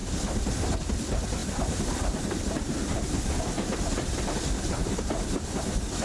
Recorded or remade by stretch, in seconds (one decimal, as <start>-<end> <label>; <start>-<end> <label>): 0.0-6.0 recorded